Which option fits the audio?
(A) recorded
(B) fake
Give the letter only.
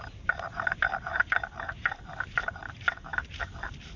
B